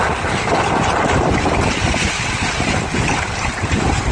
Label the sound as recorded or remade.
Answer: recorded